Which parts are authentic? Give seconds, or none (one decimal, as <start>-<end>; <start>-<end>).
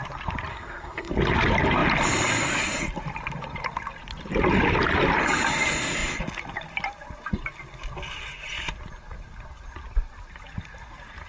0.0-0.5; 1.1-11.3